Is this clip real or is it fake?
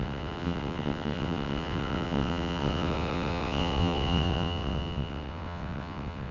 fake